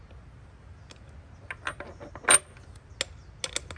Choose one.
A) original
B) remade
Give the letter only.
A